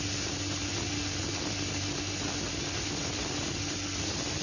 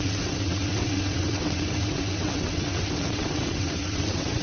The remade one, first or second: second